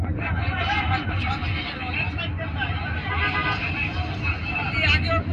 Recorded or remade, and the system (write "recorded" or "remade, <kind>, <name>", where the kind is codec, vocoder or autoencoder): recorded